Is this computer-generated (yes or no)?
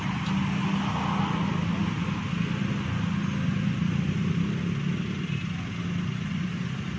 no